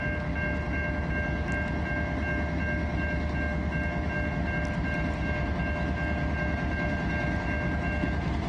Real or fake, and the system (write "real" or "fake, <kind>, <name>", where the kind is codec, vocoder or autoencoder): real